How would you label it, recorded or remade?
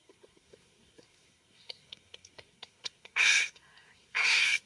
remade